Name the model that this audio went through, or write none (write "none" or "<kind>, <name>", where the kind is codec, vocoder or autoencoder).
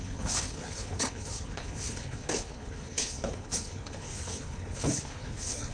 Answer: codec, HILCodec